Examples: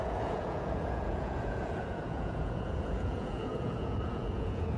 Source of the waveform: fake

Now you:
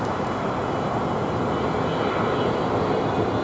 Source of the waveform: real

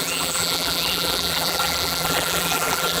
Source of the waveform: fake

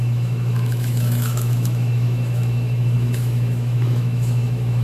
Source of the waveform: fake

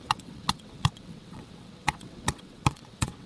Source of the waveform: fake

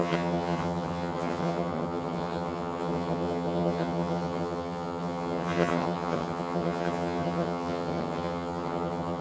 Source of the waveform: fake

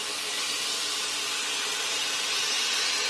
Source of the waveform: real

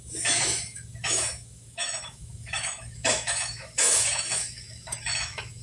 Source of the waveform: fake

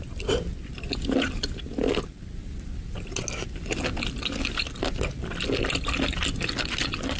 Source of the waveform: real